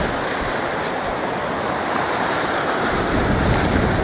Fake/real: real